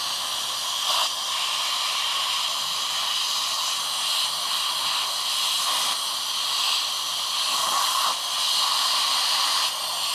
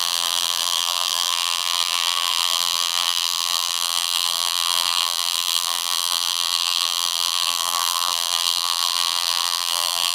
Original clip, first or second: first